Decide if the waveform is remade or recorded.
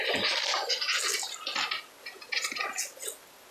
recorded